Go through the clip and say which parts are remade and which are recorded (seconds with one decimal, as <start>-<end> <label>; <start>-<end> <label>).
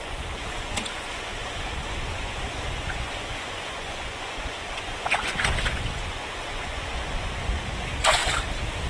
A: 0.0-8.2 remade; 8.2-8.9 recorded